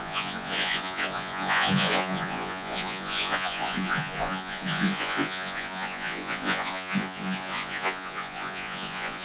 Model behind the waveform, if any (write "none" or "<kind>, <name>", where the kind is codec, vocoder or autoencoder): vocoder, Vocos